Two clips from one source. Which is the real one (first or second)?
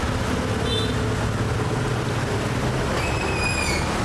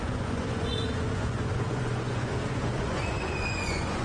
first